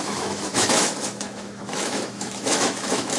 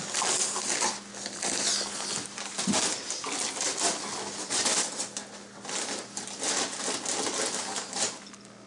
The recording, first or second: second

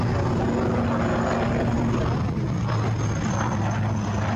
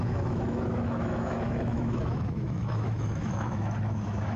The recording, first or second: first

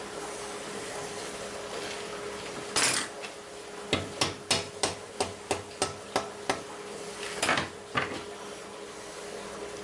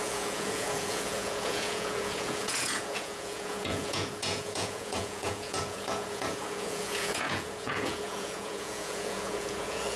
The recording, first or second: first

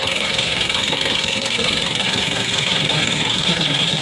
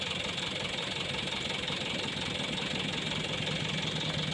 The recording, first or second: second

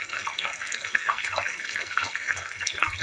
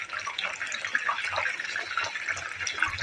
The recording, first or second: second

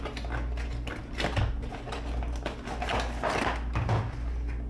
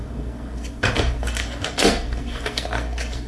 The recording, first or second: first